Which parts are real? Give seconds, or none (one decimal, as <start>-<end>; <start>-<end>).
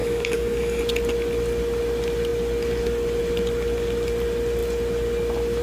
0.8-5.6